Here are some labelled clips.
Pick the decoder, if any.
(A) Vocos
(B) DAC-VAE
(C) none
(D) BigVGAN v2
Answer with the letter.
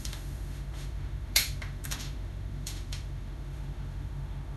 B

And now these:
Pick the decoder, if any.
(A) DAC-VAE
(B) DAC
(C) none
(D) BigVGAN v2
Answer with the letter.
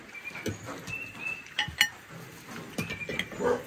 C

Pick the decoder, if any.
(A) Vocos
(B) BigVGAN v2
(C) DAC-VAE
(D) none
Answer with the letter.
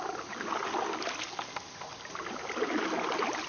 D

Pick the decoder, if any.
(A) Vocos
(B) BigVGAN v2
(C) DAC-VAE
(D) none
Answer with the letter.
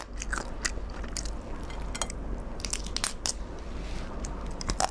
D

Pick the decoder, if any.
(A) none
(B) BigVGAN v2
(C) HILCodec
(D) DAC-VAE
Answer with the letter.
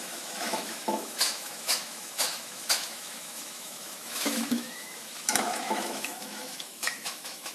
D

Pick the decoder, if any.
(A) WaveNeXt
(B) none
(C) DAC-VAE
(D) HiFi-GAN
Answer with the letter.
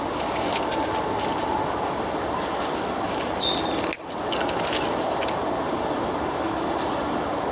B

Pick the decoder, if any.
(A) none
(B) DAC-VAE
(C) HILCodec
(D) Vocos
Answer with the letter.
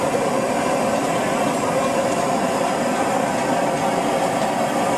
A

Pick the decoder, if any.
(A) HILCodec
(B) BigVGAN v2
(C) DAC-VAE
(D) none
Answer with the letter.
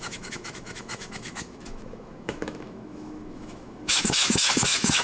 C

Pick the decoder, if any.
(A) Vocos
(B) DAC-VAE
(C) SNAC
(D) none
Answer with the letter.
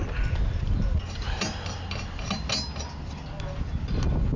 D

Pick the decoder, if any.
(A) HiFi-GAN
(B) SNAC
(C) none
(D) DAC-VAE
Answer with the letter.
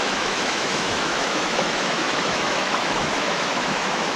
D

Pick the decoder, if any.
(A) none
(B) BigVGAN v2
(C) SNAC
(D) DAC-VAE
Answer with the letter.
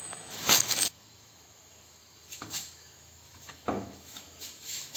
D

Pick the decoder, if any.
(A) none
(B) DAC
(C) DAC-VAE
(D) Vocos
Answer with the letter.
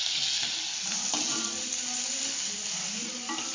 A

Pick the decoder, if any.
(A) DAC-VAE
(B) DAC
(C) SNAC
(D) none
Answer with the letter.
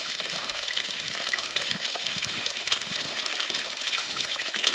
A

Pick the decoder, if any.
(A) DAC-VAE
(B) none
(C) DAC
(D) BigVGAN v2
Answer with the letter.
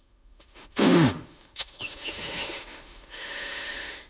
A